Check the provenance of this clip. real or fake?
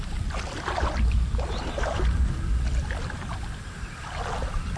real